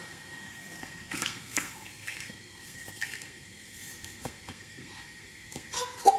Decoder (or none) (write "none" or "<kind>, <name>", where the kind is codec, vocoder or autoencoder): codec, SNAC